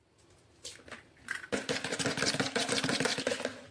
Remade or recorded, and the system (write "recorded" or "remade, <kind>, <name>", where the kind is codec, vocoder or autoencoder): recorded